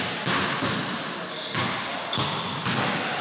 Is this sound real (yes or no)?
yes